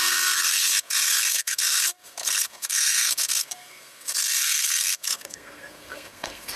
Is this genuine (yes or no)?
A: no